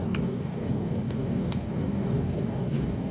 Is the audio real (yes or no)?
no